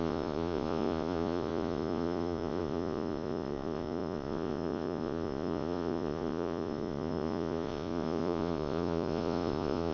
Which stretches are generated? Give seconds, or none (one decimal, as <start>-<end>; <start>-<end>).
0.0-9.9